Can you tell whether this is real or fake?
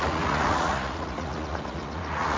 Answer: fake